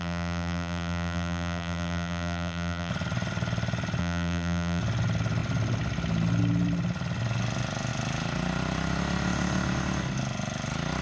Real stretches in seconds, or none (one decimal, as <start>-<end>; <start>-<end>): 2.9-4.0; 4.8-11.0